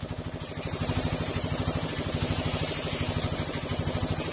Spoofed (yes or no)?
yes